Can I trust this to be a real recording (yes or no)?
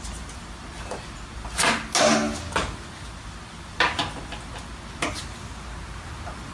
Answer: yes